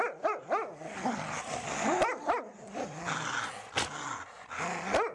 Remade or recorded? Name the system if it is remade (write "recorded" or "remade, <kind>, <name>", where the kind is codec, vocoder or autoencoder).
recorded